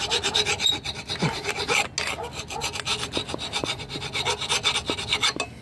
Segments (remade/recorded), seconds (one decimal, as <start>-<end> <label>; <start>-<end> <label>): 0.0-5.6 recorded